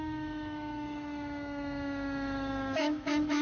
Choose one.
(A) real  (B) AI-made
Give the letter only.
B